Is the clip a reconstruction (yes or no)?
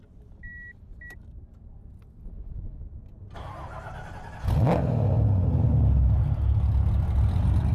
no